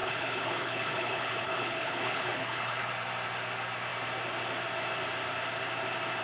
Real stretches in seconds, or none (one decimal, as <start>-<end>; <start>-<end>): 2.9-6.2